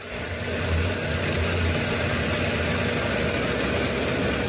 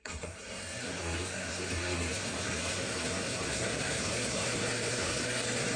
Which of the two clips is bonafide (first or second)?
first